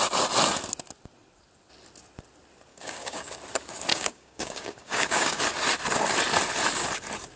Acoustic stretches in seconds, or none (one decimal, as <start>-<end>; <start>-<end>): 0.0-2.7; 3.3-3.9; 5.4-7.4